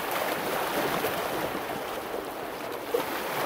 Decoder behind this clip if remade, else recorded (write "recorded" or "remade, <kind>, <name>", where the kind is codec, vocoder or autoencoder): recorded